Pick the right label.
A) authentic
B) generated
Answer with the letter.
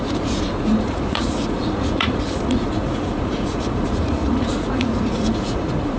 B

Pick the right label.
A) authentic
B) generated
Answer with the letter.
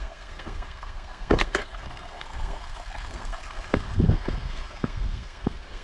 B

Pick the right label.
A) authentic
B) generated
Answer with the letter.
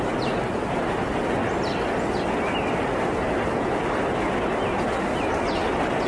B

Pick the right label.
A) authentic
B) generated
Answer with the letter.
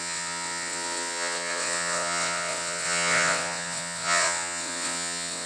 B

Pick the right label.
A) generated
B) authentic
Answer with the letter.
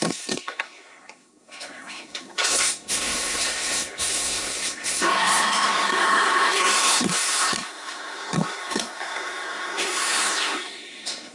A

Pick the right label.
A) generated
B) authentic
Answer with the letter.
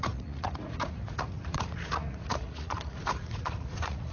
A